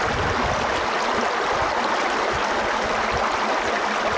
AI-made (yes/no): no